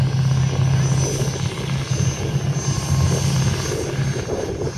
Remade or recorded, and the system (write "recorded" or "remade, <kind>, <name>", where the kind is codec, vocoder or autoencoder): recorded